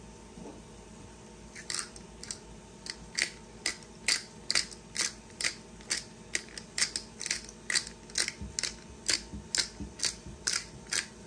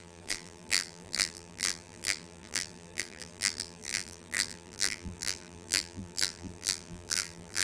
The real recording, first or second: first